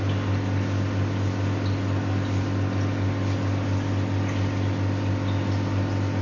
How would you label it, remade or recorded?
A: recorded